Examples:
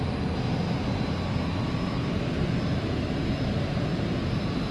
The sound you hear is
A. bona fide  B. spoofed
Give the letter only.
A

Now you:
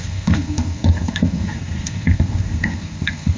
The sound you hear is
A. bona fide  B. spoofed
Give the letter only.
B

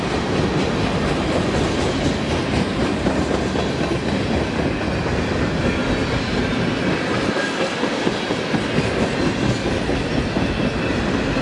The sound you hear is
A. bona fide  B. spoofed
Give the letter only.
A